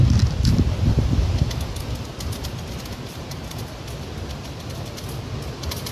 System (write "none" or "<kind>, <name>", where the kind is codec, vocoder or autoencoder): none